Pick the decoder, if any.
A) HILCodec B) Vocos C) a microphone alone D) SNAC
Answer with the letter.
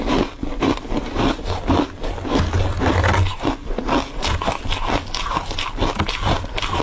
C